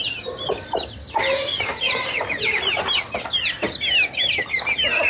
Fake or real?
real